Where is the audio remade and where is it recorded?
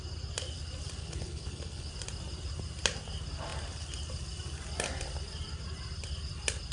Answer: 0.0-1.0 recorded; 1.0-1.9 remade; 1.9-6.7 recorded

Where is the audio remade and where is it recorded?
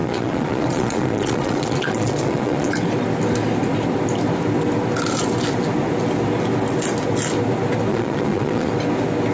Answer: 0.0-2.7 remade; 2.7-7.9 recorded; 7.9-8.7 remade; 8.7-9.3 recorded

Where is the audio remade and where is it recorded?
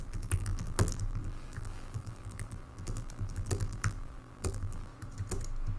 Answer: 0.0-4.9 remade; 4.9-5.8 recorded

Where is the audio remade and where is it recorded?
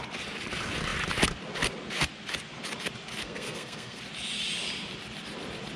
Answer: 0.0-3.2 recorded; 3.2-4.0 remade; 4.0-5.8 recorded